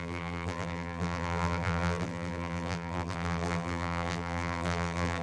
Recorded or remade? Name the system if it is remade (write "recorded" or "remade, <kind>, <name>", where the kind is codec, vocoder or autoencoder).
remade, vocoder, BigVGAN v2